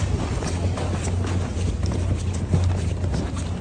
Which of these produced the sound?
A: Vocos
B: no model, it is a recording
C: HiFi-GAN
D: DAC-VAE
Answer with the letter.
B